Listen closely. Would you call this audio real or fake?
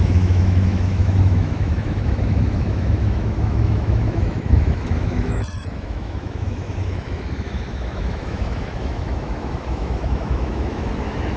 fake